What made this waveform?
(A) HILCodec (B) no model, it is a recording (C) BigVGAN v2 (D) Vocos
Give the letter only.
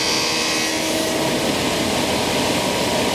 B